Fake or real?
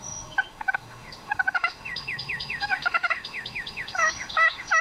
fake